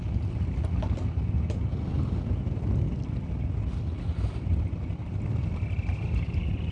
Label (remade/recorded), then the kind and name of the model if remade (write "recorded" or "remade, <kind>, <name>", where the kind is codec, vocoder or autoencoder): recorded